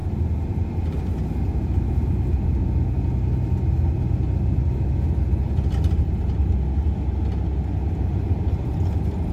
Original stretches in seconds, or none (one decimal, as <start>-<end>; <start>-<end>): 0.0-9.3